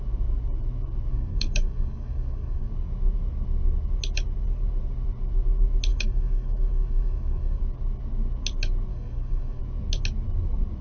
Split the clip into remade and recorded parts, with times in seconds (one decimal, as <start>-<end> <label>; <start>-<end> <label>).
0.0-1.1 recorded; 1.1-2.7 remade; 2.7-5.9 recorded; 5.9-7.6 remade; 7.6-8.9 recorded; 8.9-9.6 remade; 9.6-10.8 recorded